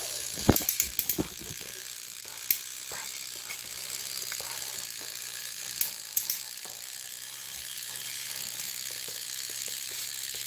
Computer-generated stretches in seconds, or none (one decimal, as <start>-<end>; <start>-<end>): 0.0-2.3; 3.5-10.5